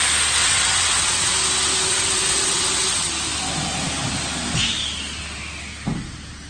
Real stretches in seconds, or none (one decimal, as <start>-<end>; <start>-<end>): 0.0-0.4; 1.3-1.9; 3.1-6.5